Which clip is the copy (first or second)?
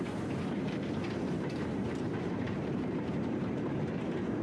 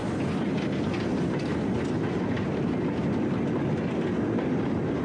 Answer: first